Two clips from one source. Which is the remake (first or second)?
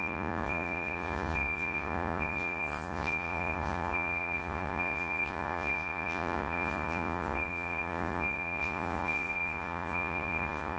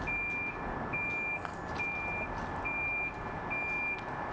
first